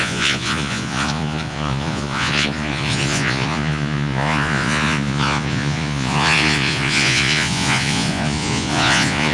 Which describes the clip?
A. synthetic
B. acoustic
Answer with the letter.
A